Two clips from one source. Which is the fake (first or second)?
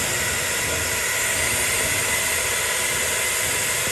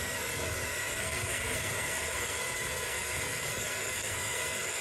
second